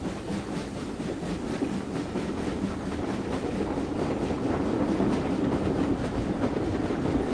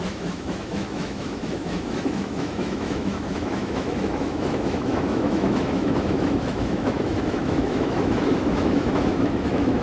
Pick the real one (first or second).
first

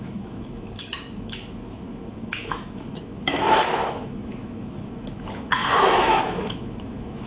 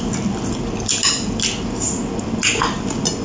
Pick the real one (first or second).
second